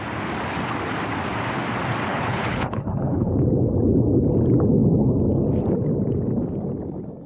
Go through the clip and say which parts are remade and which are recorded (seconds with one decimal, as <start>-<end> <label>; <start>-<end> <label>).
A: 0.0-2.1 recorded; 2.1-3.3 remade; 3.3-7.3 recorded